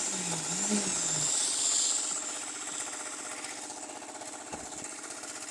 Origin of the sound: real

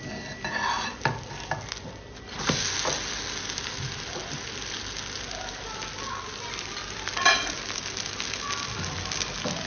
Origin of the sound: real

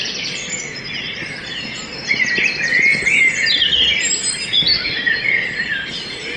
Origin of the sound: real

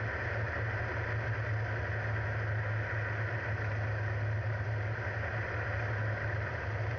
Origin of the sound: real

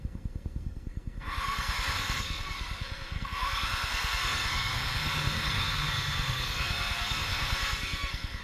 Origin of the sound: fake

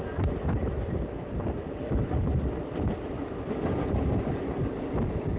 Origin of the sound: fake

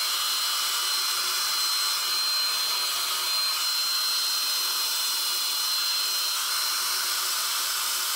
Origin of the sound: real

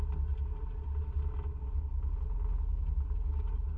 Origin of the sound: real